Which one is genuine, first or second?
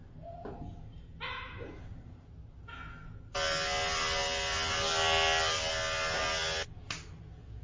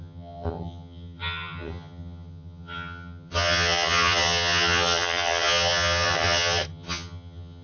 first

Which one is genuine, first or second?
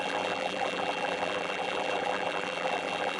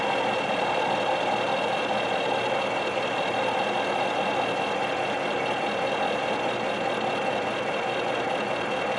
second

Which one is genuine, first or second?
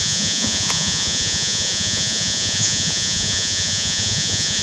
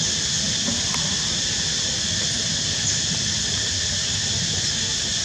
second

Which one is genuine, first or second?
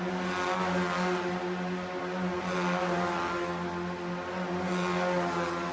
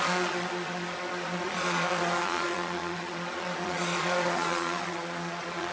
first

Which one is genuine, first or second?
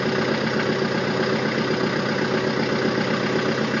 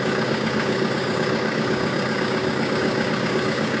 first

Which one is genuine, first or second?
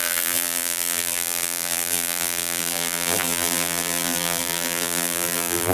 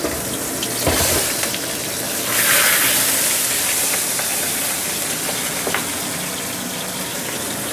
second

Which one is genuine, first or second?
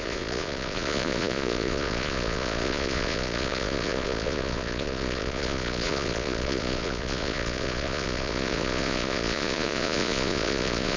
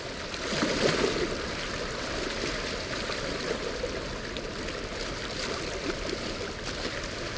second